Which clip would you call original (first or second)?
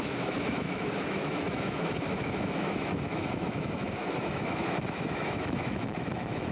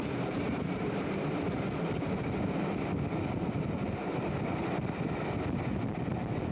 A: second